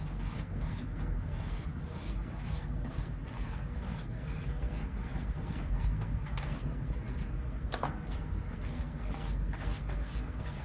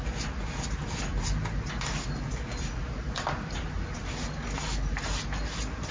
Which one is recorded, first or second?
second